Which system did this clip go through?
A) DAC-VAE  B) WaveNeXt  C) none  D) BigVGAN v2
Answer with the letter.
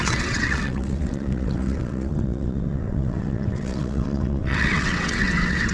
B